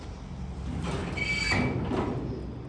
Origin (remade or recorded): recorded